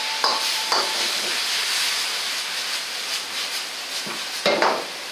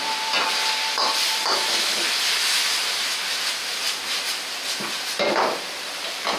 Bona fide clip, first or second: second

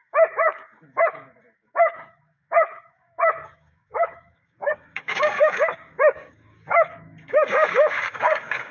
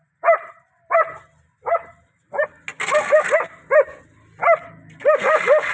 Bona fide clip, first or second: second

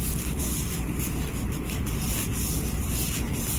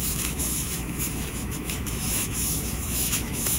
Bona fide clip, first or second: first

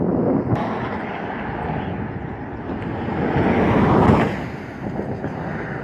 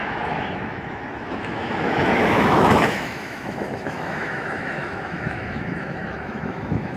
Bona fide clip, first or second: first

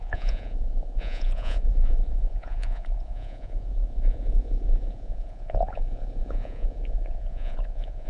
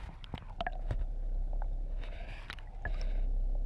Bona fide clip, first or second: second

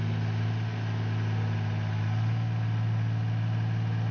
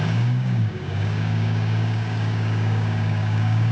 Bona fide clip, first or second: first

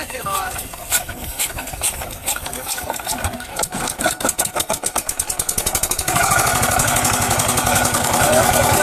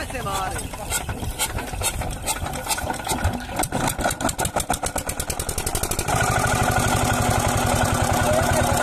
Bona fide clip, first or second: second